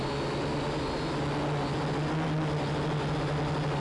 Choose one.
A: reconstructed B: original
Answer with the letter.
B